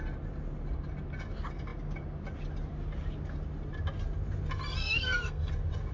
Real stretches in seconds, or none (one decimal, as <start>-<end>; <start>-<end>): 0.0-4.8; 5.5-5.9